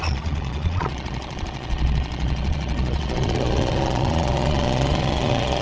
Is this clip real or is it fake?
fake